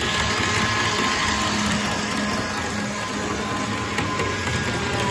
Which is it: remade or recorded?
recorded